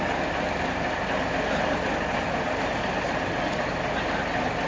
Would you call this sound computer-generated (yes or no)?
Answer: no